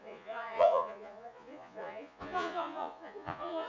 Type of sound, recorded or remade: remade